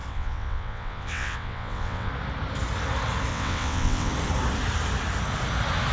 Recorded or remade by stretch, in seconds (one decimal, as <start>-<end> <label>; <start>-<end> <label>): 0.0-2.1 remade; 2.1-3.3 recorded; 3.3-4.1 remade; 4.1-5.9 recorded